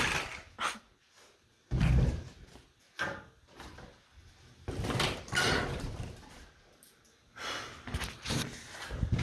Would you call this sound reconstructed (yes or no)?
no